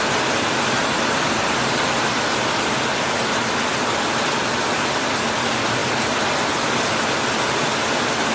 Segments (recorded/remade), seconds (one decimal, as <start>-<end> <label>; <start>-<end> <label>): 0.0-8.3 recorded